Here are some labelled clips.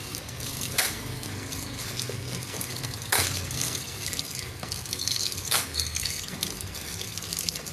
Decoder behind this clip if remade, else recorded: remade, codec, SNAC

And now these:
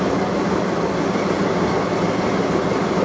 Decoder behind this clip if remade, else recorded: recorded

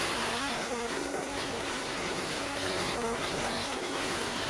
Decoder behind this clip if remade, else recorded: remade, codec, SNAC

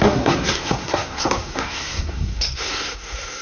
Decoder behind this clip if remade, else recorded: remade, codec, SNAC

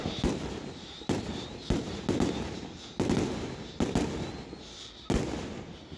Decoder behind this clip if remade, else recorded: recorded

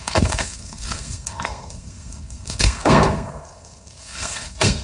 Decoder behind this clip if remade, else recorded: remade, codec, SNAC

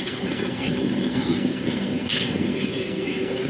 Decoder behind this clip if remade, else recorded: remade, codec, SNAC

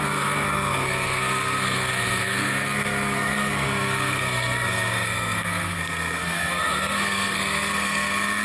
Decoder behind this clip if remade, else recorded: remade, codec, SNAC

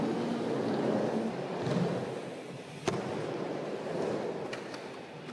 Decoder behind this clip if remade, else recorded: recorded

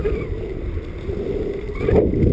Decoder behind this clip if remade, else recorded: recorded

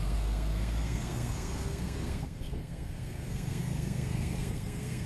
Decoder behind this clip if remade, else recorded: remade, codec, SNAC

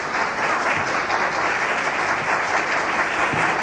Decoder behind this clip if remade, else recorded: recorded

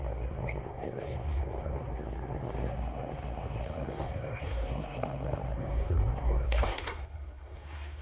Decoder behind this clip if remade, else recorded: remade, codec, SNAC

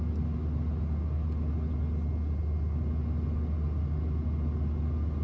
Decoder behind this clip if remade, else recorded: recorded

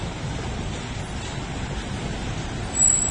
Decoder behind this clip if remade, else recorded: recorded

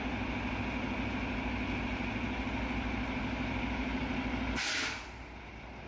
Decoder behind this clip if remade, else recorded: recorded